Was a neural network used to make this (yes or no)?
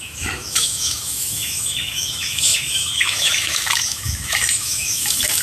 yes